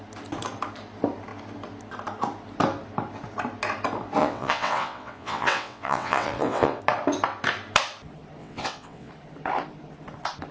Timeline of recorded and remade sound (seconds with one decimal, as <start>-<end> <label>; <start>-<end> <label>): 0.0-4.2 recorded; 4.2-6.8 remade; 6.8-8.4 recorded; 8.4-9.1 remade; 9.1-10.5 recorded